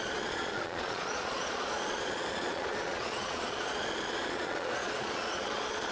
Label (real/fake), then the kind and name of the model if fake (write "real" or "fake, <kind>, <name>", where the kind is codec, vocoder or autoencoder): fake, vocoder, Vocos